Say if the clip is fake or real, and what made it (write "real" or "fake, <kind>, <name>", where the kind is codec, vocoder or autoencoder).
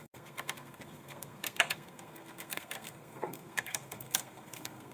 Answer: fake, codec, SNAC